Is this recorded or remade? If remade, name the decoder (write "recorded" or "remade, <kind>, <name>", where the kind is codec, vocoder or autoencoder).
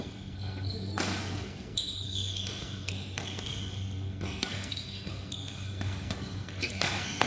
remade, codec, SNAC